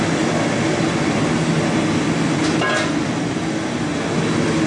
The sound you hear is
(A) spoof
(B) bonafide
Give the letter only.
B